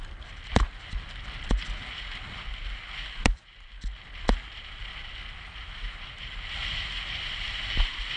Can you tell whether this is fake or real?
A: real